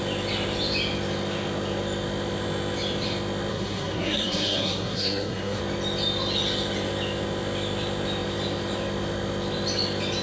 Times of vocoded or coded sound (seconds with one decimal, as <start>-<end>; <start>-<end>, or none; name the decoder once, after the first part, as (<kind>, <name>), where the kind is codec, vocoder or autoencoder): 3.5-5.6 (codec, SNAC)